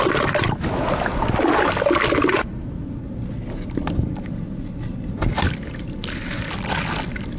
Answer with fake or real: real